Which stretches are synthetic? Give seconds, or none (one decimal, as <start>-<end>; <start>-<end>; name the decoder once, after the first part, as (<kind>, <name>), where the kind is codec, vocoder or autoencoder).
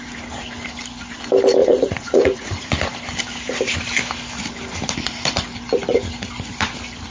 1.6-2.8 (vocoder, Vocos)